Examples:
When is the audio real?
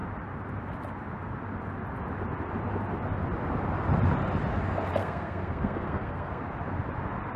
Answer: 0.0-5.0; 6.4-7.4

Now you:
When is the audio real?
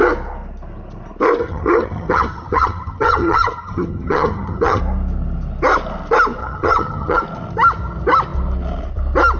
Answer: 0.0-1.4; 4.8-6.4; 7.2-9.4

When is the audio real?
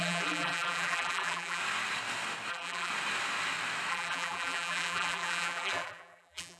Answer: 1.6-2.5; 2.9-3.9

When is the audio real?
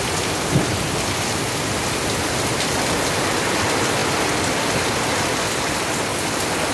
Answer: 0.0-6.7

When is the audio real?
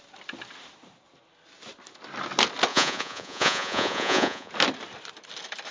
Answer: 0.0-2.7; 4.5-5.7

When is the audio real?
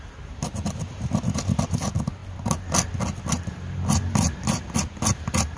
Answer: 0.0-5.6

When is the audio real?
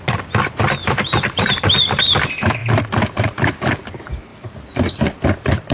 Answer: 0.0-0.8; 2.0-4.3; 5.0-5.7